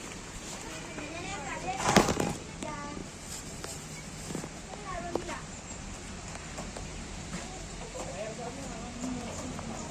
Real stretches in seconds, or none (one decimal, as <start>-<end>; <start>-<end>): 0.0-1.3; 2.0-6.9; 8.5-9.9